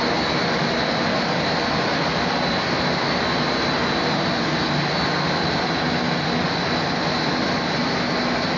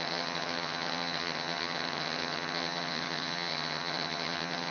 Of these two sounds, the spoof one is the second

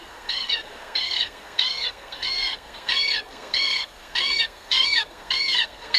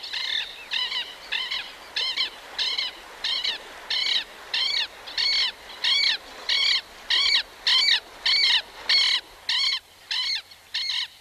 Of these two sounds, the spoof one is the first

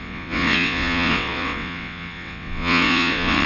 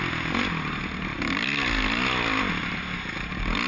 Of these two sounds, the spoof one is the first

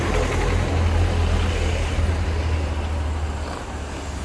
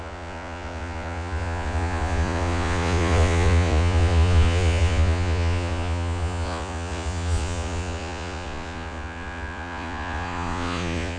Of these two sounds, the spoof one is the second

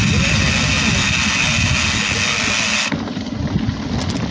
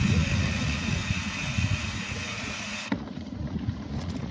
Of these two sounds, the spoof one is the second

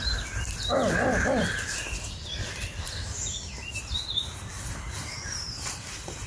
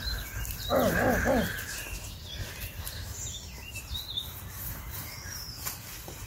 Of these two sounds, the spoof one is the first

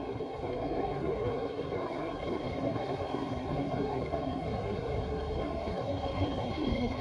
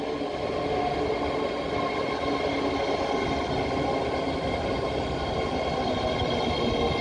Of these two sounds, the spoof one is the first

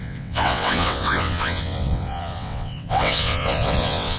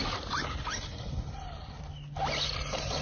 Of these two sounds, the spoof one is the first